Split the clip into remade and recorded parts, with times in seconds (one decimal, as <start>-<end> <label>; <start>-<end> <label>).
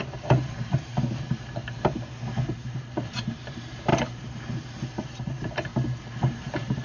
0.0-5.7 remade; 5.7-6.2 recorded; 6.2-6.8 remade